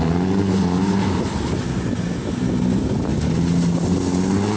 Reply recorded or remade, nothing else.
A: recorded